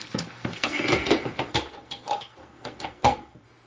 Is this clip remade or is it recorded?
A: remade